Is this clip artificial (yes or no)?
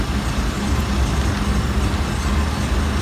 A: no